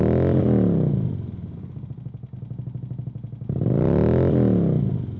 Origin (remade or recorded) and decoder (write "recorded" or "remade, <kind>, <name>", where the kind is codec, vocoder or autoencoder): recorded